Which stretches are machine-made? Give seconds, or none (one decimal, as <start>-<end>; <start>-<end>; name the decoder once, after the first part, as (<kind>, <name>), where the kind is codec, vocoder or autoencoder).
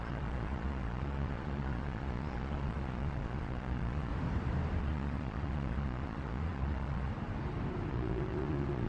0.0-4.1 (vocoder, Vocos); 4.8-7.1; 7.9-8.9